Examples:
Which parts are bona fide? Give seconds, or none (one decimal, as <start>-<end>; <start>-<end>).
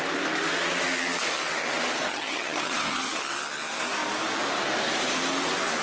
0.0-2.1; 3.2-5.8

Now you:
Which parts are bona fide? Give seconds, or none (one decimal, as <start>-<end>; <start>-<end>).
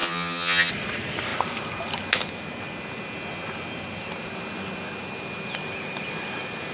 0.7-6.7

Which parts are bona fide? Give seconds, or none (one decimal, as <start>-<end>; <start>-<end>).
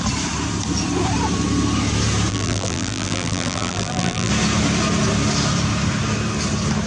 0.0-2.3; 4.3-6.9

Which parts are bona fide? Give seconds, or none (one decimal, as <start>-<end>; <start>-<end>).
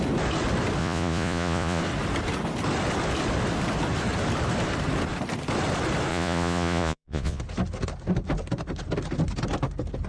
0.0-0.8; 1.8-6.1; 7.4-10.1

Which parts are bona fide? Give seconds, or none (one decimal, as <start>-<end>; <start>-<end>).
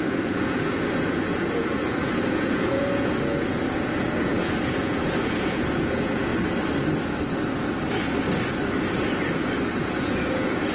6.3-9.8